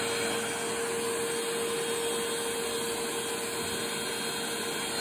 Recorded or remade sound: recorded